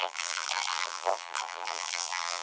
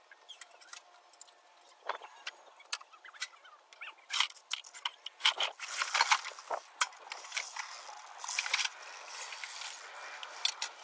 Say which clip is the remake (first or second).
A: first